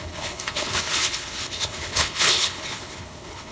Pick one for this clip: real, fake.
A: fake